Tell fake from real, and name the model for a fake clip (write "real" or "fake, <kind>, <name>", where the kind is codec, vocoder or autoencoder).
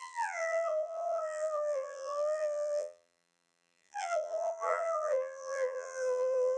fake, vocoder, BigVGAN v2